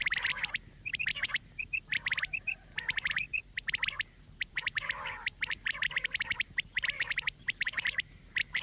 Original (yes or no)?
no